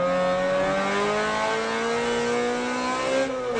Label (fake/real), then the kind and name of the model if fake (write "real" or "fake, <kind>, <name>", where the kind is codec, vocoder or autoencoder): real